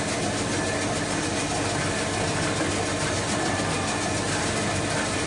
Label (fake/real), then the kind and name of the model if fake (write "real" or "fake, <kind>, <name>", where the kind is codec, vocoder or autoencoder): real